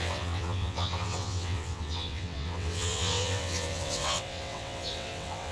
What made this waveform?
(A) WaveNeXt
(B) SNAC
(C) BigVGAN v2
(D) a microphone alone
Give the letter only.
A